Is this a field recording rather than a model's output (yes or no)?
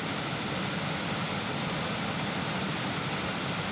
no